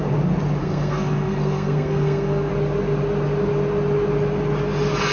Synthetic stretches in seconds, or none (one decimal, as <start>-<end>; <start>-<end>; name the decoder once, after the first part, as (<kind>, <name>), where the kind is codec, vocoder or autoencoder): 0.6-2.5 (codec, SNAC)